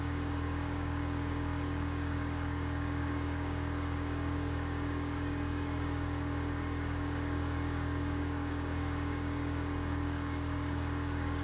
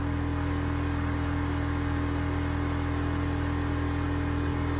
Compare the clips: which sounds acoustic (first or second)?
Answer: second